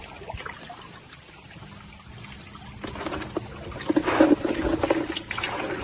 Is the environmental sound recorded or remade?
recorded